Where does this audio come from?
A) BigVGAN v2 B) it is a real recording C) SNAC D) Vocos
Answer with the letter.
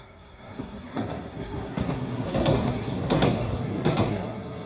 C